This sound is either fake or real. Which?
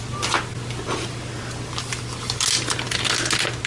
real